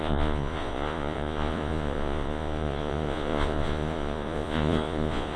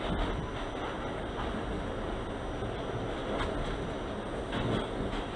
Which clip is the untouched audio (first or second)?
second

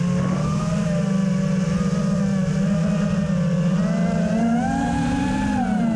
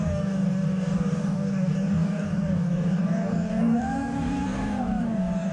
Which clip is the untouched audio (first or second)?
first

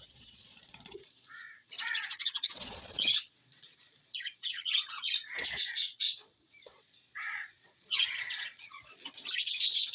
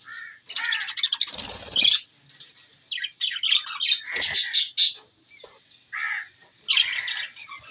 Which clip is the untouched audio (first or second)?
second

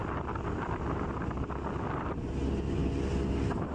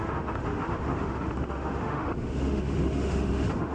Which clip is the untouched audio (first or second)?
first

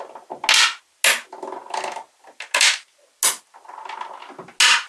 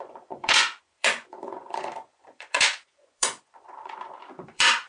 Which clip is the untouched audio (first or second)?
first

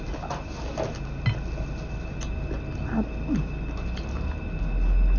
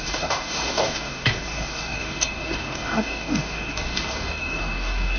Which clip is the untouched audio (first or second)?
first